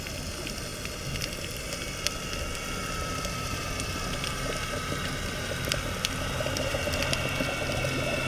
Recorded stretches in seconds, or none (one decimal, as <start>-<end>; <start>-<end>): 0.0-2.8; 7.0-8.3